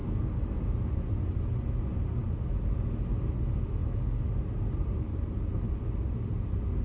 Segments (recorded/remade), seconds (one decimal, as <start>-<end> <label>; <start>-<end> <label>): 0.0-6.8 recorded